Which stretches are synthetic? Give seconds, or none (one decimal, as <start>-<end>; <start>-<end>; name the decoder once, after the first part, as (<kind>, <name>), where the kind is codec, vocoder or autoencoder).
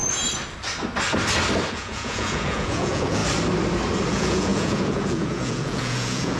1.7-3.2 (vocoder, Vocos); 4.1-6.4